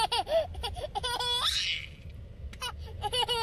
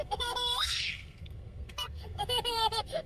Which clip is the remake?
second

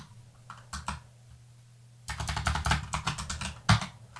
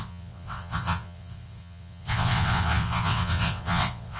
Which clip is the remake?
second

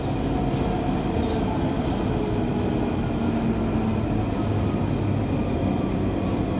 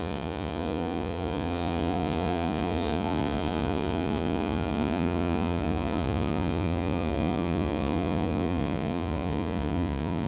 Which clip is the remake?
second